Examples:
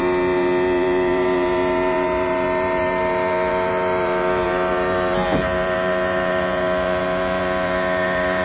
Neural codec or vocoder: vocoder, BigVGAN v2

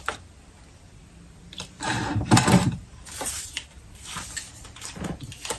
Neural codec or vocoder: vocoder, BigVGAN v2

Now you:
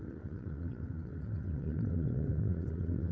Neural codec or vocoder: vocoder, WaveNeXt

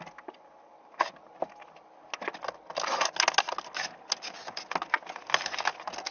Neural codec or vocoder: none